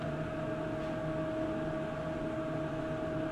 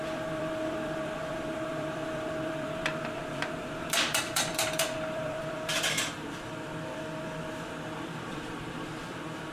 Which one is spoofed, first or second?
second